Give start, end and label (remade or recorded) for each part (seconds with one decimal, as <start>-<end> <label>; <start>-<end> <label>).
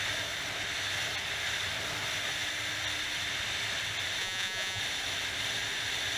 0.0-4.2 recorded; 4.2-4.8 remade; 4.8-6.2 recorded